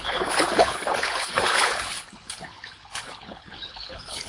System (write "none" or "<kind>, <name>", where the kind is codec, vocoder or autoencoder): codec, HILCodec